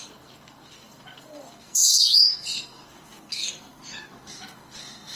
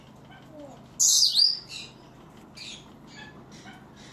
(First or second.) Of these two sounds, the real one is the second